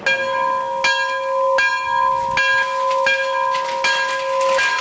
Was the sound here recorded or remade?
recorded